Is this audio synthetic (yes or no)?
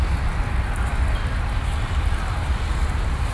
no